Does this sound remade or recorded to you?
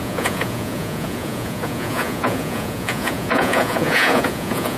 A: remade